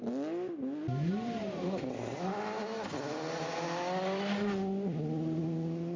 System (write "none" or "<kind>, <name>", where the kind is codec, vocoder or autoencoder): none